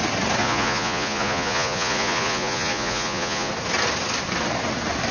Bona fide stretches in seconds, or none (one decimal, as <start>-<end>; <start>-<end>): 0.0-0.4; 3.5-5.1

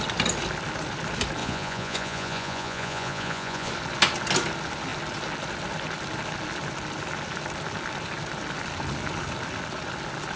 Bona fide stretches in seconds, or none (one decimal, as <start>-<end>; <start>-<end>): 0.0-1.4; 3.7-10.4

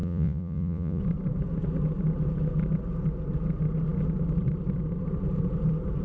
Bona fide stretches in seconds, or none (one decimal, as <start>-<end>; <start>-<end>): 1.0-6.0

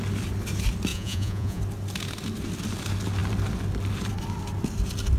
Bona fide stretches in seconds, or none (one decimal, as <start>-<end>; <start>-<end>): 0.0-0.9; 1.6-5.2

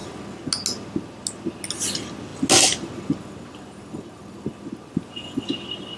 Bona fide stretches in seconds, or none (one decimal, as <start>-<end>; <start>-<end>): 0.0-6.0